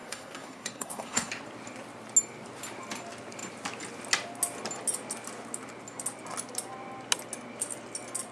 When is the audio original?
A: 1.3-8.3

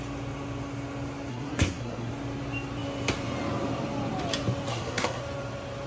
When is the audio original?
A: 0.0-1.3; 2.1-4.7; 5.2-5.9

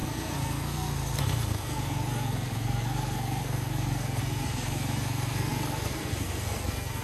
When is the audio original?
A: none

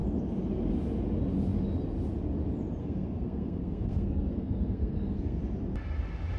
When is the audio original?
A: 0.0-2.8; 5.4-6.4

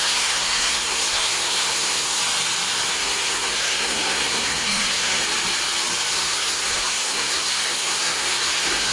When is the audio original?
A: 2.2-2.9; 5.2-6.1

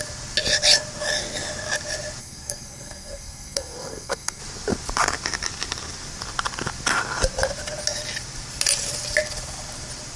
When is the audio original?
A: 0.0-2.2; 4.4-10.2